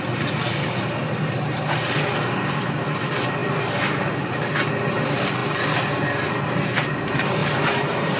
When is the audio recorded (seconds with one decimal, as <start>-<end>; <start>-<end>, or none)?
0.0-1.0; 1.6-3.4; 4.2-7.4